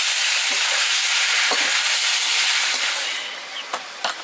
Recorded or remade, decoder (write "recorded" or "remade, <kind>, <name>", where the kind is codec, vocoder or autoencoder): recorded